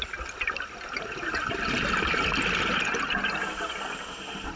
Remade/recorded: recorded